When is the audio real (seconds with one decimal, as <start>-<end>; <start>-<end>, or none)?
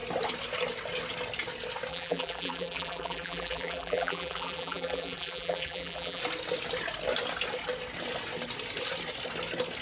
0.0-1.9; 6.2-9.8